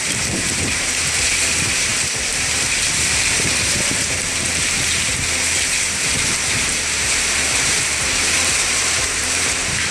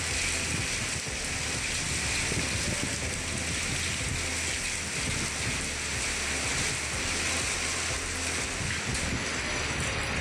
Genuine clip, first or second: second